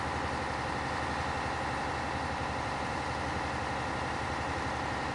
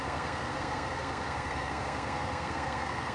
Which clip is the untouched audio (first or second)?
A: first